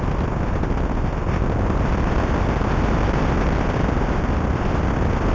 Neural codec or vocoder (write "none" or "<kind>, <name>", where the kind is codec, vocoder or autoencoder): none